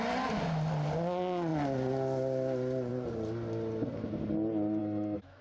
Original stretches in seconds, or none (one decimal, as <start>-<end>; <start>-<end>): 0.0-4.8